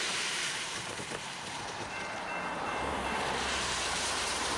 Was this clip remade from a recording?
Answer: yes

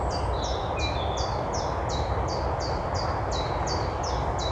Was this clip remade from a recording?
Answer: no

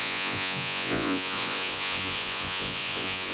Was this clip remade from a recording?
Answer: yes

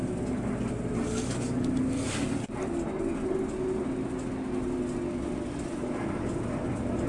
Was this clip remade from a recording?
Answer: no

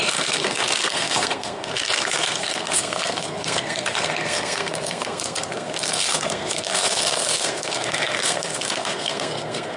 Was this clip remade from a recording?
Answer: yes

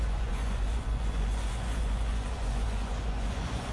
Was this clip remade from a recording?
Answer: yes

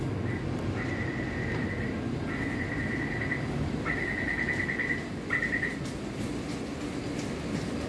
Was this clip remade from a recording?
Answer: no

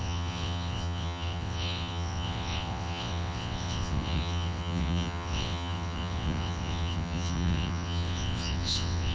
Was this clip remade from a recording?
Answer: yes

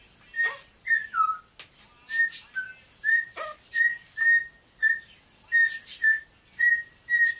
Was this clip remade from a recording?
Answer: no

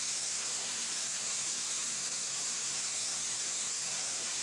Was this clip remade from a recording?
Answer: yes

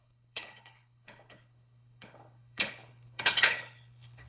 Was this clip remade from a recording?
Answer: yes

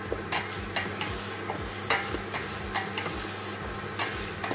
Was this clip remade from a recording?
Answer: no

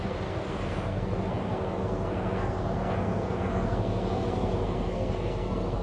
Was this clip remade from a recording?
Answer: yes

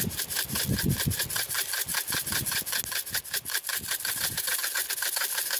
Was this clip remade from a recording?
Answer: no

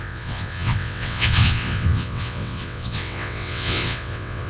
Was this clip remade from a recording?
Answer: yes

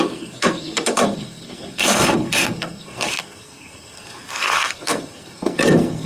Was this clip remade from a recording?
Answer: yes